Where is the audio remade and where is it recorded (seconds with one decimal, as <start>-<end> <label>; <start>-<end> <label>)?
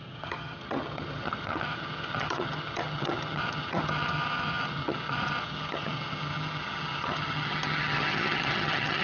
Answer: 0.0-9.0 remade